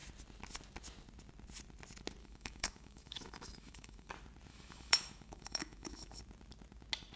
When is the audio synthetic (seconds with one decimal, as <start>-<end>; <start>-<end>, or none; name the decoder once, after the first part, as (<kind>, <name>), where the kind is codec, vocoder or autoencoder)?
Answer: 2.2-4.1 (autoencoder, DAC-VAE); 4.5-6.2